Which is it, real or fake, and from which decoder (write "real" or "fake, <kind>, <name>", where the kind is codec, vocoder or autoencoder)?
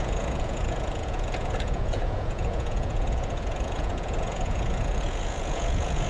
fake, vocoder, Vocos